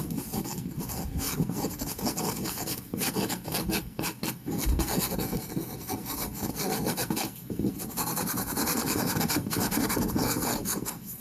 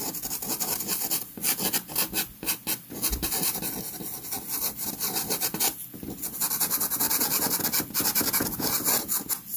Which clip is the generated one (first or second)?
first